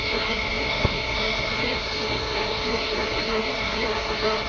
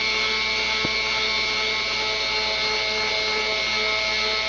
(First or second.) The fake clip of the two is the first